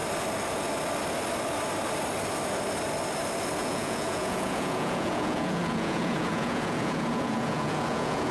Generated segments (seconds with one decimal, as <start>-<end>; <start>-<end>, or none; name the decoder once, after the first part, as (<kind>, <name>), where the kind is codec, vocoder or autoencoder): 3.6-8.3 (vocoder, Vocos)